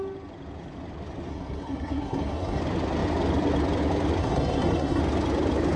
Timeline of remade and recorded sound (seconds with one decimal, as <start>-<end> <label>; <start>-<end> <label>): 0.0-1.3 recorded; 1.3-2.6 remade; 2.6-4.2 recorded; 4.2-5.0 remade; 5.0-5.8 recorded